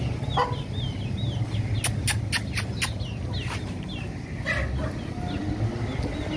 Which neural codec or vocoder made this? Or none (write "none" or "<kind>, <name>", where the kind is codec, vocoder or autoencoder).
none